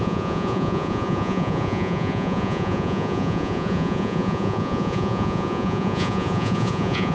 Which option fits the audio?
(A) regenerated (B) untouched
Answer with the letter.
A